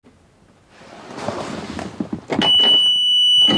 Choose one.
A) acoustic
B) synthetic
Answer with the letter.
A